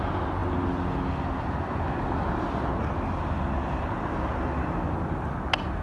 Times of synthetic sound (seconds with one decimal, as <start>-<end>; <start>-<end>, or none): none